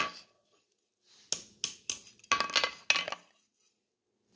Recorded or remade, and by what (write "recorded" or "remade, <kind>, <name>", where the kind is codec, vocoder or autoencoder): recorded